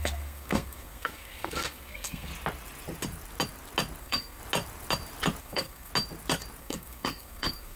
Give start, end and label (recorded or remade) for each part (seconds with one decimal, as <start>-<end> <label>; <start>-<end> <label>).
0.0-2.3 remade; 2.3-4.0 recorded; 4.0-4.4 remade; 4.4-5.4 recorded; 5.4-5.9 remade; 5.9-6.6 recorded; 6.6-7.8 remade